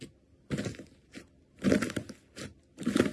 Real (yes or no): yes